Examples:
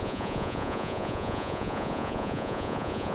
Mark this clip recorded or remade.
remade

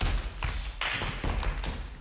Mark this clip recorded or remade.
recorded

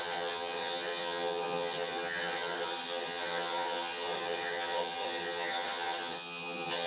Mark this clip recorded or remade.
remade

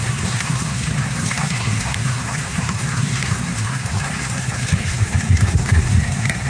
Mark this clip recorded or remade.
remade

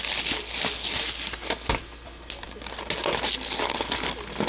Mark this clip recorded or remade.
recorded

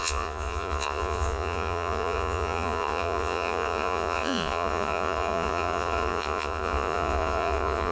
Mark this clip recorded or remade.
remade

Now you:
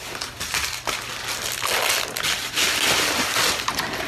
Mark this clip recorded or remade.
recorded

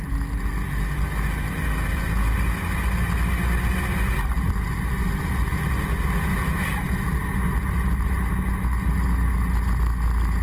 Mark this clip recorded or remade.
recorded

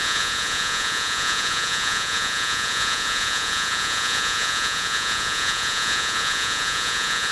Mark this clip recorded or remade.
remade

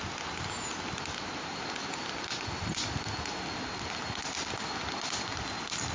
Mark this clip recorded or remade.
recorded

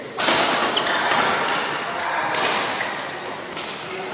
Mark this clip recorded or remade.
recorded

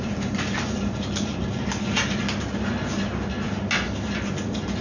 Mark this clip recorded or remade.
recorded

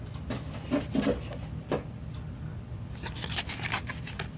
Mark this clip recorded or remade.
recorded